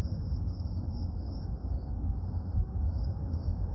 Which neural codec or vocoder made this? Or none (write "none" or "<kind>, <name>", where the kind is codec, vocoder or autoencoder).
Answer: autoencoder, DAC-VAE